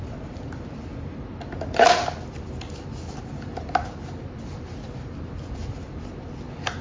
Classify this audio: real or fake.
real